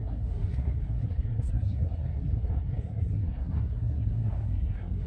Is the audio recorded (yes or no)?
no